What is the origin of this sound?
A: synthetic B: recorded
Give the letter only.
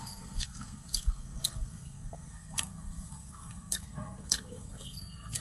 A